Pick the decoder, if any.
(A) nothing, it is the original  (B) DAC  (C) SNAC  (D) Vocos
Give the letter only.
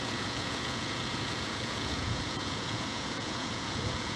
D